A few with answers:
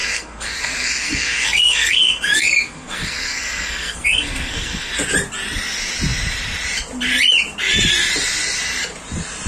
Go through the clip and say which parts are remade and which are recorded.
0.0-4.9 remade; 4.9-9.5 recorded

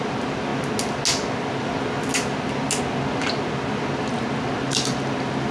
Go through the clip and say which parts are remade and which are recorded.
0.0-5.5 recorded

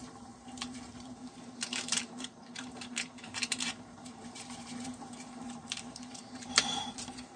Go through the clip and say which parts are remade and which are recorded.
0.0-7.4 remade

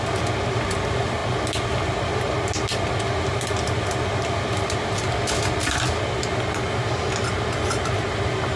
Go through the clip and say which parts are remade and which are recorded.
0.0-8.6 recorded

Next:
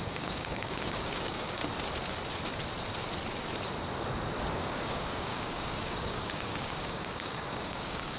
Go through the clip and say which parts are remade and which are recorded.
0.0-1.6 remade; 1.6-4.5 recorded; 4.5-8.2 remade